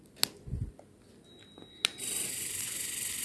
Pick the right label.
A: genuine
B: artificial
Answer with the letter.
A